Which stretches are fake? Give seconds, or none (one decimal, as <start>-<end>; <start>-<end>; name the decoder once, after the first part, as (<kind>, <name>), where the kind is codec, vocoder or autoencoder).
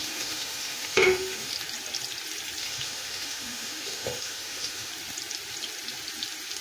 0.0-1.5 (autoencoder, DAC-VAE); 2.6-4.9